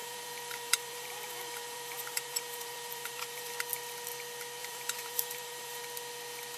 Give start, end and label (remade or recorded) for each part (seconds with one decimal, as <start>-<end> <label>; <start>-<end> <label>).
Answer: 0.0-3.5 remade; 3.5-4.6 recorded; 4.6-5.8 remade; 5.8-6.6 recorded